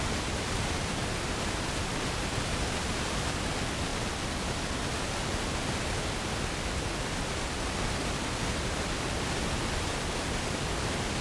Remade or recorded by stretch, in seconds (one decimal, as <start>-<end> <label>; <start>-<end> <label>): 0.0-11.2 recorded